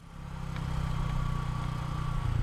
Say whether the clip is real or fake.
real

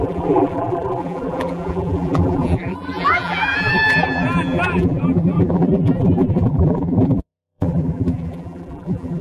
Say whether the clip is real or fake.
fake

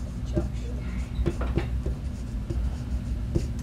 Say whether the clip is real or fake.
real